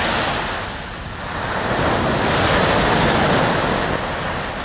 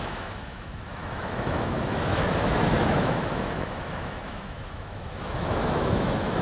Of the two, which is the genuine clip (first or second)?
first